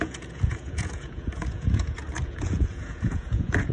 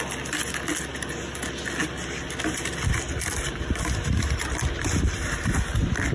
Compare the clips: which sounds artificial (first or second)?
first